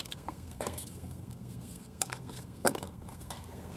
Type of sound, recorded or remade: remade